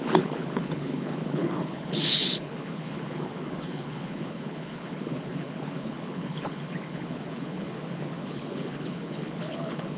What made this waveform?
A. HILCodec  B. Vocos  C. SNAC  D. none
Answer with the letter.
A